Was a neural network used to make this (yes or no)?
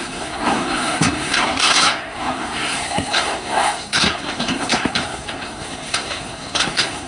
yes